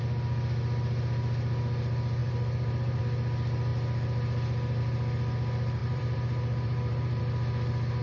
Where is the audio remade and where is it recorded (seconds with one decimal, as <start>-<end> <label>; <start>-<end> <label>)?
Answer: 0.0-2.2 recorded; 2.2-3.0 remade; 3.0-5.8 recorded; 5.8-7.2 remade; 7.2-8.0 recorded